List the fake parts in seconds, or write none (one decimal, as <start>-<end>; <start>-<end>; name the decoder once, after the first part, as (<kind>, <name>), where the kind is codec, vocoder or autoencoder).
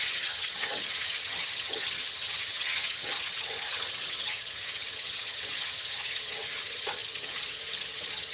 0.0-8.3 (vocoder, HiFi-GAN)